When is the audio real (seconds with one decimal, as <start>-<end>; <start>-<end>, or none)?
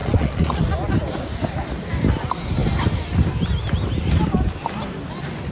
0.6-5.5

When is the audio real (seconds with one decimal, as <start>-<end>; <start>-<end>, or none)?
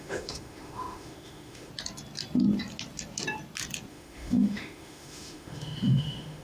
1.7-3.9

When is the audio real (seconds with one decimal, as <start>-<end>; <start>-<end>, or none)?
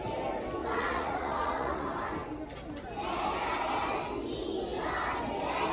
0.0-0.6; 1.9-5.7